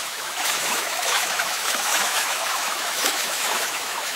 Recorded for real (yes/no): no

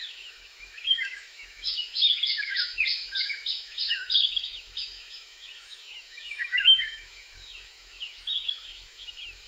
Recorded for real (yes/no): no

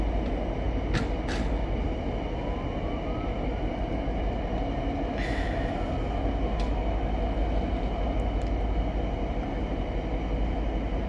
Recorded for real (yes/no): yes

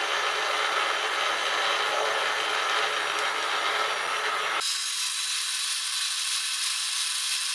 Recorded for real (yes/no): yes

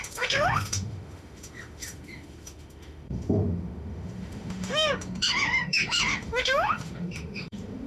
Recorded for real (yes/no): no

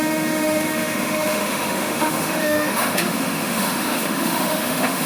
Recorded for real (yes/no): no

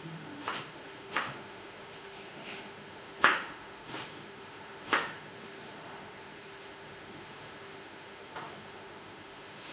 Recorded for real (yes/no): no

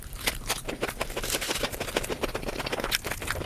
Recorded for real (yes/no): yes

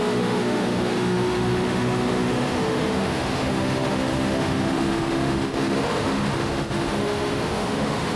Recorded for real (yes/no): no